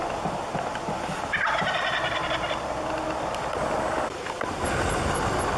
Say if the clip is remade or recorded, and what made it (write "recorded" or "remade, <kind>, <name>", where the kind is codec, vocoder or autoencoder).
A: remade, vocoder, BigVGAN v2